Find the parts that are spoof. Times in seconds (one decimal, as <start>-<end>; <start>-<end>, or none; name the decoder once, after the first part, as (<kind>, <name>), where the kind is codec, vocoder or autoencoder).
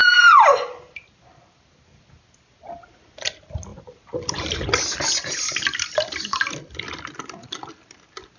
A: 0.0-2.1 (vocoder, BigVGAN v2); 3.7-5.0; 6.3-7.7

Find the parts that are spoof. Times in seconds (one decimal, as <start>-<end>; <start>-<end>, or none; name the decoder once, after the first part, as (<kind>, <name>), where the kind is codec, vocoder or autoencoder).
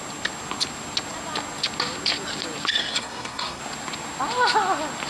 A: 2.8-3.6 (codec, SNAC)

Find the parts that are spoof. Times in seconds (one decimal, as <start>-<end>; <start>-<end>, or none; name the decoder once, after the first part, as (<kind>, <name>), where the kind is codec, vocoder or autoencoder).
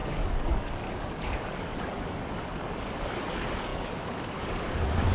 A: 0.0-5.1 (codec, DAC)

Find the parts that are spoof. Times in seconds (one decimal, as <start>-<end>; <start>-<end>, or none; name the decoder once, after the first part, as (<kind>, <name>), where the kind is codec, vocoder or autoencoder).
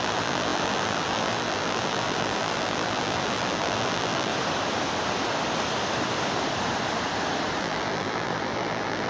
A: 0.0-4.3 (vocoder, BigVGAN v2); 7.6-9.1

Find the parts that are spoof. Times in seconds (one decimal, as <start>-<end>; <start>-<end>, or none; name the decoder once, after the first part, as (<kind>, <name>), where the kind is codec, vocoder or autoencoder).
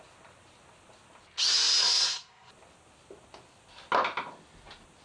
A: 1.8-2.5 (codec, SNAC)